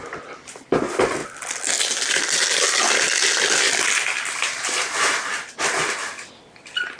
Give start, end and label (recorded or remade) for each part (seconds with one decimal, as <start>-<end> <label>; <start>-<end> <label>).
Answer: 0.0-7.0 recorded

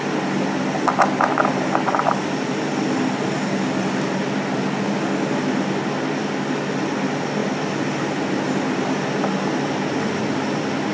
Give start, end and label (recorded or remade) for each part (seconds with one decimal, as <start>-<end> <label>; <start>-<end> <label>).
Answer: 0.0-10.9 recorded

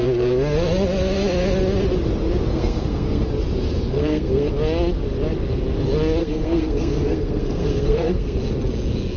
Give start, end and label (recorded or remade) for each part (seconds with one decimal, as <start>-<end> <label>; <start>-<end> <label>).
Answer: 0.0-2.5 recorded; 2.5-3.3 remade; 3.3-3.9 recorded; 3.9-4.5 remade; 4.5-6.2 recorded; 6.2-8.4 remade; 8.4-9.2 recorded

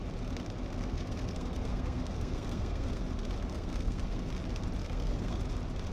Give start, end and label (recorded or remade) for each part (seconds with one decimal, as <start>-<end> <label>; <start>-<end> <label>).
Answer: 0.0-0.8 recorded; 0.8-3.0 remade; 3.0-3.5 recorded; 3.5-4.3 remade; 4.3-4.8 recorded; 4.8-5.4 remade; 5.4-5.9 recorded

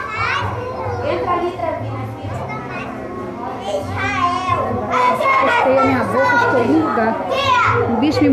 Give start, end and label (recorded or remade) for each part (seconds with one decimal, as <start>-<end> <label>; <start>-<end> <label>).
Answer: 0.0-5.0 recorded; 5.0-5.6 remade; 5.6-8.3 recorded

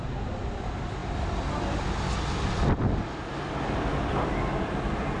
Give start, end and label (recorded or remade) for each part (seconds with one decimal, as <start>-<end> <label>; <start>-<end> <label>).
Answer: 0.0-5.2 recorded

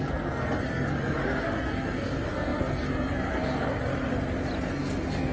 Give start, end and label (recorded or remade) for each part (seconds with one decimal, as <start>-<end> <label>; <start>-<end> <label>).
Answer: 0.0-3.9 remade; 3.9-4.7 recorded; 4.7-5.3 remade

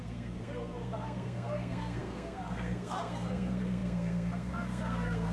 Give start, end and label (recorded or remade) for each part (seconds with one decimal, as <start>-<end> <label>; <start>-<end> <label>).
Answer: 0.0-5.3 remade